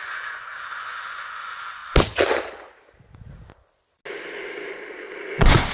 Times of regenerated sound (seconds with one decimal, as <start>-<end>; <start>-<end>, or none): 0.0-1.8; 5.2-5.7